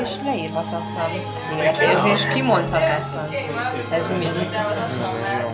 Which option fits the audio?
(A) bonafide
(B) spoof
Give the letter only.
A